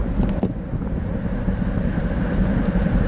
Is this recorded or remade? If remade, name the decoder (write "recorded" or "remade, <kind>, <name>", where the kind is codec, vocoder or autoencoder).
recorded